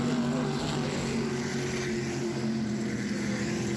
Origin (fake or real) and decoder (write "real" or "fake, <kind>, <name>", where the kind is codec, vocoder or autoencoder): real